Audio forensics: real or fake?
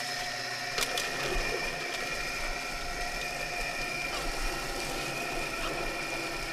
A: real